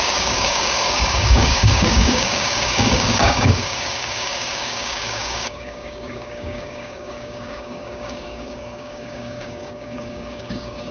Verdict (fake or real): fake